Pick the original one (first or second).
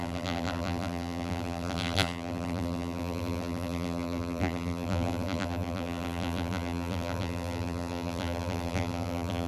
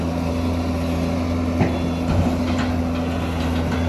second